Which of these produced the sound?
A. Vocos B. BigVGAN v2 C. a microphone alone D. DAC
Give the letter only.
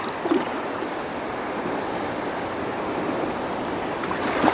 C